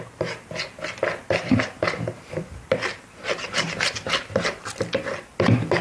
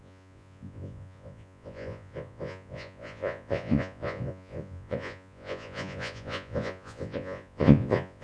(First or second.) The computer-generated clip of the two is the second